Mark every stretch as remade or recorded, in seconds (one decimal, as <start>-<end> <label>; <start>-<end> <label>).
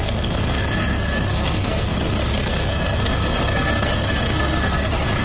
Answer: 0.0-5.2 remade